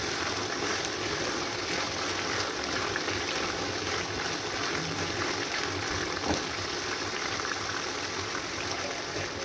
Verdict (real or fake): real